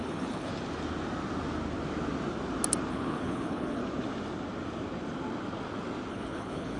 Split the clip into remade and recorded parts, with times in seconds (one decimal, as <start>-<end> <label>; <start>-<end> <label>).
0.0-0.5 remade; 0.5-2.9 recorded; 2.9-3.8 remade; 3.8-6.1 recorded; 6.1-6.8 remade